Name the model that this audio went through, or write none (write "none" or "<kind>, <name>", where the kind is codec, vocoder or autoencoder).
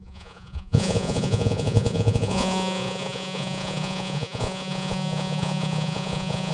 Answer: vocoder, Vocos